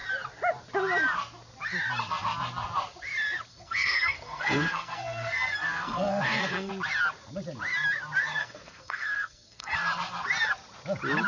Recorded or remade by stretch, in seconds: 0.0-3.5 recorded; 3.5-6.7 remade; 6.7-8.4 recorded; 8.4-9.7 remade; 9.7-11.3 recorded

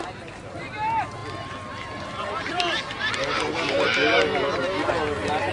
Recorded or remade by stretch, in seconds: 0.0-5.5 recorded

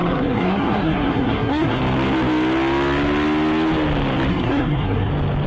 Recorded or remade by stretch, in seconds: 0.0-1.8 remade; 1.8-4.3 recorded; 4.3-5.1 remade; 5.1-5.5 recorded

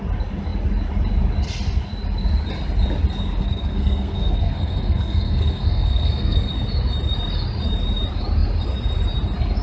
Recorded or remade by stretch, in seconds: 0.0-3.4 recorded; 3.4-6.5 remade; 6.5-9.6 recorded

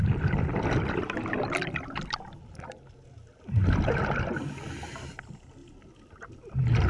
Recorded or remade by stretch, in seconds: 0.0-6.9 recorded

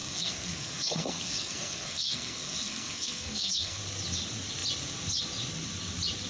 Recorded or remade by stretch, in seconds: 0.0-3.8 remade; 3.8-6.3 recorded

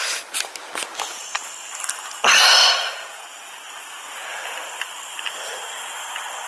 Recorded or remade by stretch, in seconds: 0.0-6.5 recorded